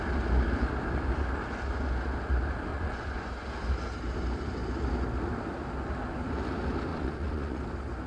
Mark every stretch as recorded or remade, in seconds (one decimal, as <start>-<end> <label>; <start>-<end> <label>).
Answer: 0.0-2.7 recorded; 2.7-3.3 remade; 3.3-6.9 recorded; 6.9-7.6 remade; 7.6-8.1 recorded

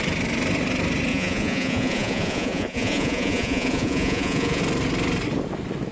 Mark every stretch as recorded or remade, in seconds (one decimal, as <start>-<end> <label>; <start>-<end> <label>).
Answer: 0.0-1.1 recorded; 1.1-4.6 remade; 4.6-5.9 recorded

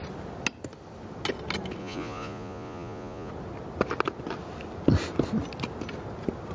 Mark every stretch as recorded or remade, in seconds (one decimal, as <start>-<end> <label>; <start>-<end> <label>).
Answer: 0.0-1.8 recorded; 1.8-3.3 remade; 3.3-6.5 recorded

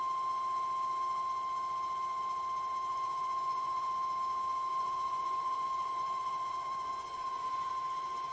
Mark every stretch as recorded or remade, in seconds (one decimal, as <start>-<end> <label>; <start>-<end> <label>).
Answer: 0.0-2.9 recorded; 2.9-3.9 remade; 3.9-4.7 recorded; 4.7-7.7 remade; 7.7-8.3 recorded